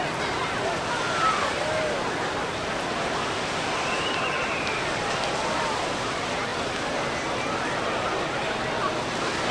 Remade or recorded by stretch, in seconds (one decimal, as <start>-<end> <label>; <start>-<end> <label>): 0.0-9.5 recorded